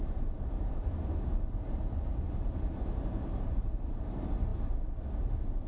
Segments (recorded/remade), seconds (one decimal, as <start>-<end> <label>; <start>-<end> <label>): 0.0-5.7 recorded